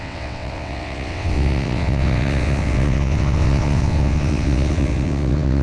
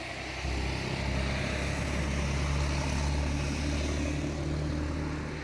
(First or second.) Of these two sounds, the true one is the second